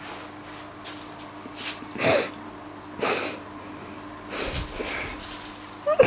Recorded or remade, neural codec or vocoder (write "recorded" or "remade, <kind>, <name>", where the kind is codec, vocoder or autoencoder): recorded